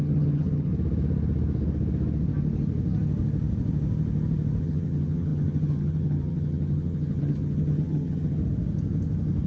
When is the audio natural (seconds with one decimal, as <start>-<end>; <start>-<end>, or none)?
0.7-4.6; 8.4-9.5